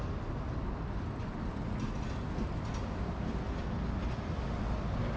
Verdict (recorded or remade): recorded